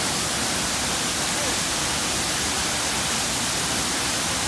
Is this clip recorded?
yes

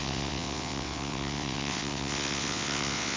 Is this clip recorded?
no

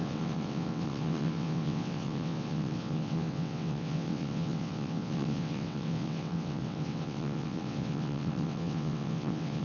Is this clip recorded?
no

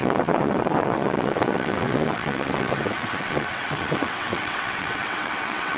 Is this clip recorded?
no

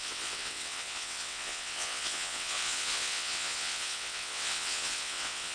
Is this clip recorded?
no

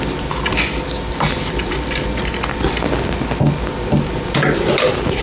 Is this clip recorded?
yes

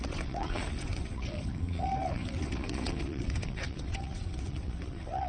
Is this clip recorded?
no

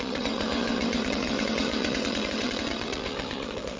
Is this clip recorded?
no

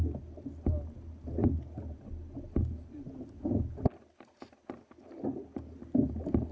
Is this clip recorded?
yes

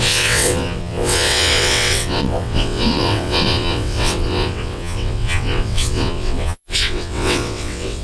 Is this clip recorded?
no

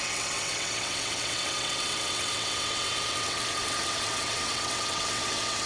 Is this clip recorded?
no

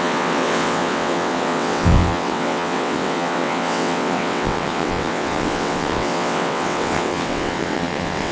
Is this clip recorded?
no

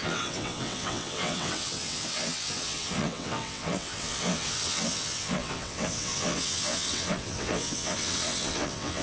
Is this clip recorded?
no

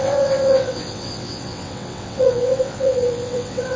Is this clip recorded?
no